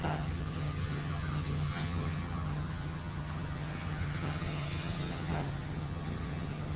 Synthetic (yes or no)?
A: yes